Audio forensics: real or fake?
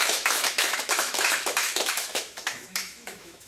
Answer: fake